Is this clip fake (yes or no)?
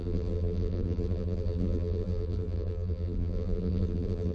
yes